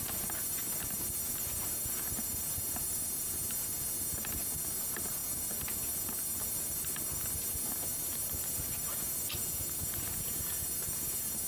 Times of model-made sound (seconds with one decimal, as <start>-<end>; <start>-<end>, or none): 0.0-11.5